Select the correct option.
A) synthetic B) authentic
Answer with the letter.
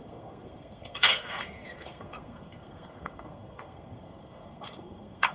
A